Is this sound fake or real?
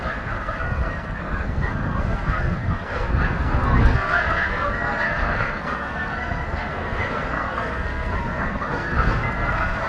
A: fake